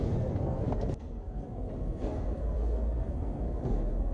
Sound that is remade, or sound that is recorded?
remade